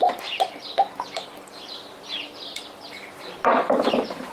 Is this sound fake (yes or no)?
no